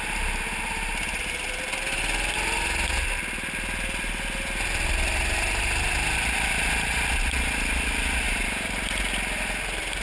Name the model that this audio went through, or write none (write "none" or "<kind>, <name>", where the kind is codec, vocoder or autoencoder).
none